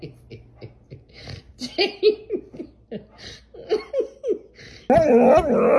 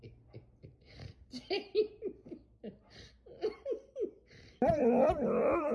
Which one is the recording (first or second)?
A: first